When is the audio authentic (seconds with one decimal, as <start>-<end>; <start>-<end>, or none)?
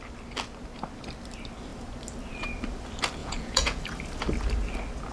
0.0-3.2; 3.8-5.1